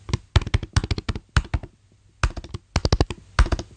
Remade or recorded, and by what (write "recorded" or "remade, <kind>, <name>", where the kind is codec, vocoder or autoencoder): recorded